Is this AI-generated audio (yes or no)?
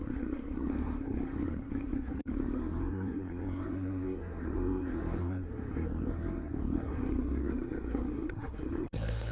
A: yes